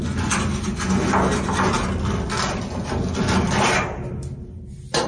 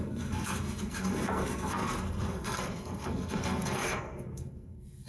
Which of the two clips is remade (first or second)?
second